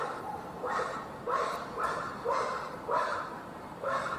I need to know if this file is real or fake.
fake